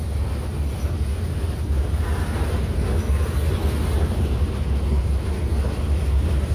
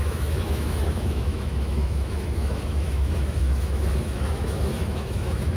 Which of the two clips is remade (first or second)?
second